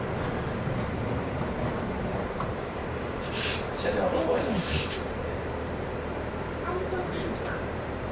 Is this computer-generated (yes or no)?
yes